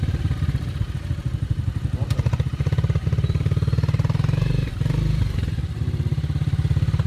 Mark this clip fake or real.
fake